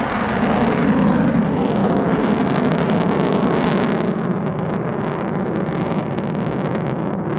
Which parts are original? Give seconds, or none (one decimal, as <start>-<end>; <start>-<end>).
0.0-1.8; 2.9-7.4